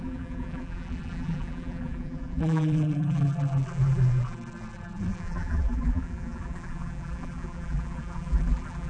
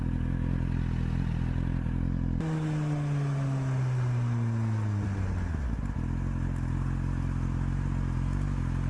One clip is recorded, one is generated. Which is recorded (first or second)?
second